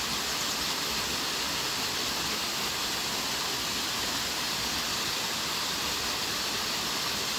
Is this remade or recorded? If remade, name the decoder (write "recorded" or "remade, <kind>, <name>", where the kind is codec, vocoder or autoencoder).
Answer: recorded